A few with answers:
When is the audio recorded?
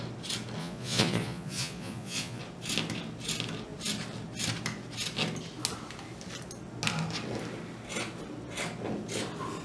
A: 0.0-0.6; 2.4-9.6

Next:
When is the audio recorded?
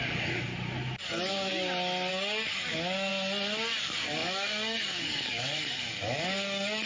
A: 0.5-1.0; 1.5-2.1; 3.1-3.8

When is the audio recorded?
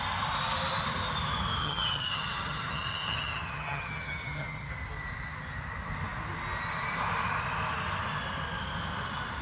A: 0.0-1.6; 4.7-9.4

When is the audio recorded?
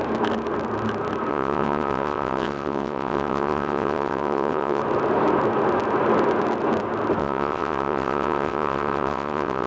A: 0.0-1.3; 4.8-7.2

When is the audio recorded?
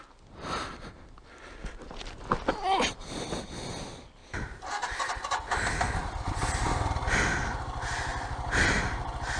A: 0.0-4.2; 4.7-6.4; 7.1-8.1; 8.9-9.4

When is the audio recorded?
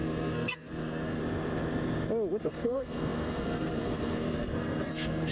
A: 1.2-2.4